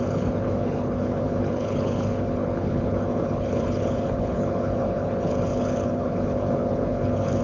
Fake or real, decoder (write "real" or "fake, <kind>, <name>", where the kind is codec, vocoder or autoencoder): fake, codec, HILCodec